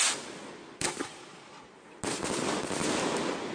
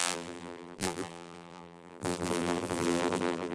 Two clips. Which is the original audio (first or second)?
first